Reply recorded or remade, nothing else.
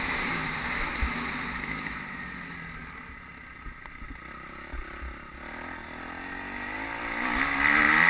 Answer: recorded